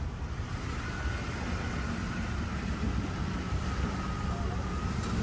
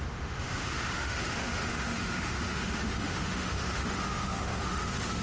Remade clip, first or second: second